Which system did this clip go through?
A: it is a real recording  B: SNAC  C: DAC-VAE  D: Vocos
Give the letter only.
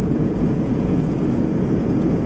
D